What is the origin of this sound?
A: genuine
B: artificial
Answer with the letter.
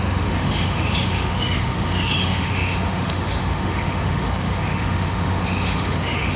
B